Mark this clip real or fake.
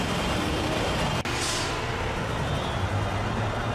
real